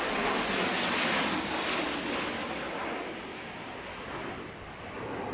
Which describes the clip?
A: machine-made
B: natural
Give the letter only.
B